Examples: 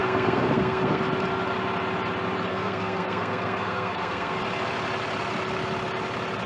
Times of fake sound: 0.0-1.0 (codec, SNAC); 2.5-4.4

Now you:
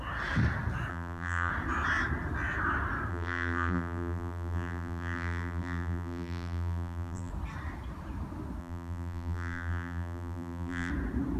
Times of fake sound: 0.9-1.5 (vocoder, BigVGAN v2); 3.1-7.3; 8.6-10.9

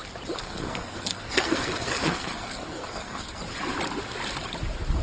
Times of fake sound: 0.4-3.4 (codec, SNAC)

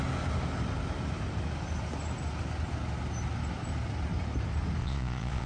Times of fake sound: 4.8-5.5 (vocoder, Vocos)

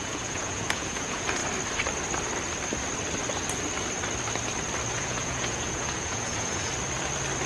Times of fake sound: 0.0-1.4 (vocoder, Vocos); 4.9-6.7

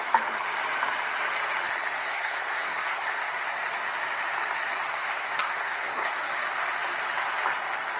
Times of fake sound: 2.0-3.3 (codec, SNAC); 4.9-6.2

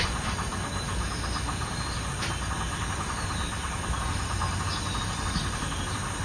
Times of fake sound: none

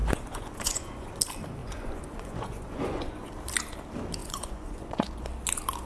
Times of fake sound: 0.0-1.1 (vocoder, Vocos); 1.6-3.3; 4.2-5.2